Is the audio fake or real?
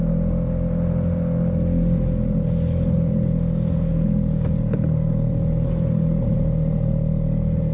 real